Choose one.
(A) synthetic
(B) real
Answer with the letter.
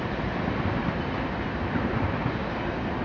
B